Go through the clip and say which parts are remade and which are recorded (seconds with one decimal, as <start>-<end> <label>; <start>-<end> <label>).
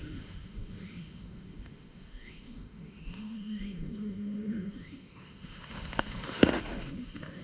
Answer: 0.0-7.4 remade